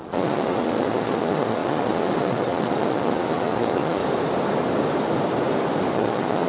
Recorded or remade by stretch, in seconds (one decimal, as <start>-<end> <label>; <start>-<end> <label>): 0.0-4.0 remade; 4.0-5.9 recorded; 5.9-6.5 remade